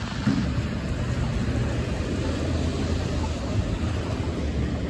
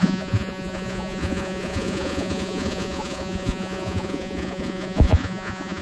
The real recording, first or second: first